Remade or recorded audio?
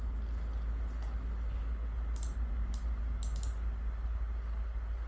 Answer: recorded